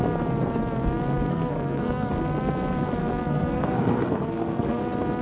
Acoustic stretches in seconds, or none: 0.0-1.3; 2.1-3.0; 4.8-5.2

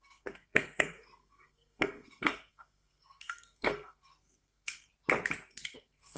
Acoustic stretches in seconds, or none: 4.9-5.7

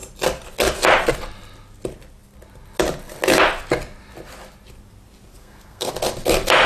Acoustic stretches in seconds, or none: 0.0-5.3; 5.9-6.7

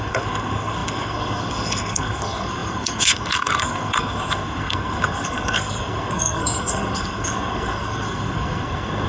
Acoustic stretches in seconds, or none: none